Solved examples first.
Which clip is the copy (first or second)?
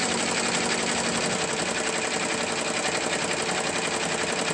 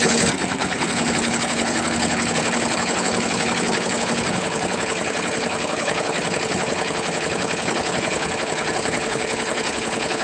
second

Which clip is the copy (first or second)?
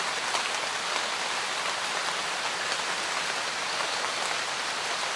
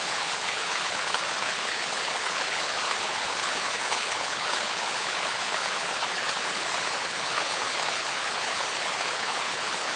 second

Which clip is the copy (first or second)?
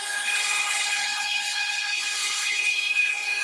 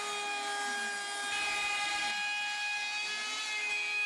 first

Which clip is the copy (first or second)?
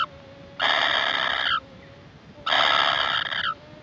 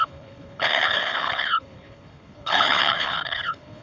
second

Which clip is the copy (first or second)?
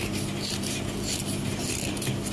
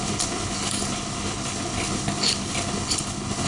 second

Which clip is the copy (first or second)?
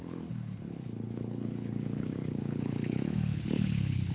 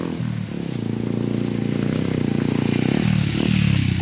first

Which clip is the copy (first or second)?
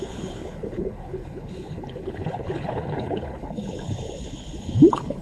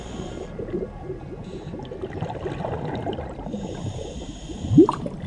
first